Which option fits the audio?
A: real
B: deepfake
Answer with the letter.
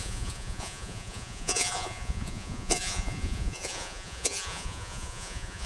B